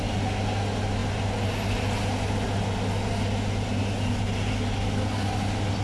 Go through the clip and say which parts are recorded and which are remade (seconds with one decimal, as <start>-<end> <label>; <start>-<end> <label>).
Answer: 0.0-5.8 recorded